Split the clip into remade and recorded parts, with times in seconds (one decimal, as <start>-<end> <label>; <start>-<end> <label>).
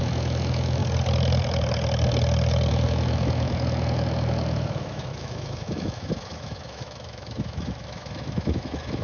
0.0-0.8 remade; 0.8-2.7 recorded; 2.7-9.0 remade